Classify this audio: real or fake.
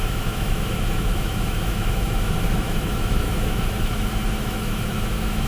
fake